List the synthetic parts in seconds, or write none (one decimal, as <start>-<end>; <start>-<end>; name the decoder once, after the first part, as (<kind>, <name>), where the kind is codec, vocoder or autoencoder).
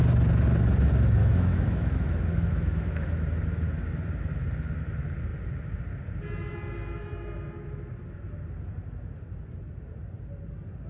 1.2-3.1 (autoencoder, DAC-VAE)